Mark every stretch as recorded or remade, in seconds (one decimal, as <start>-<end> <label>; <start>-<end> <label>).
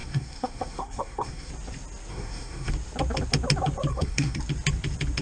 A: 0.0-1.5 remade; 1.5-2.1 recorded; 2.1-2.7 remade; 2.7-3.9 recorded; 3.9-4.4 remade; 4.4-5.2 recorded